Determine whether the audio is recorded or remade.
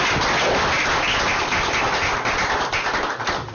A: recorded